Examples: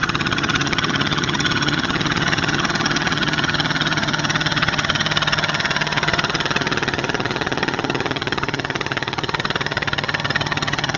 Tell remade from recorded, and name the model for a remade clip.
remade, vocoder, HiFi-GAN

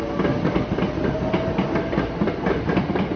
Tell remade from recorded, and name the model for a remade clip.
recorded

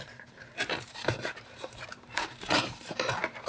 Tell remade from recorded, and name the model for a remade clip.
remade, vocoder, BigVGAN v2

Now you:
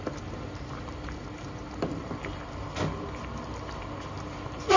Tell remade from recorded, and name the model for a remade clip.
recorded